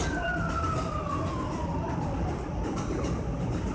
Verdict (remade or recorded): recorded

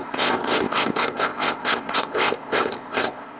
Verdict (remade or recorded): remade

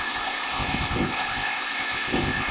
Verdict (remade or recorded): remade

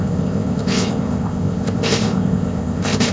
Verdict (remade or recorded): remade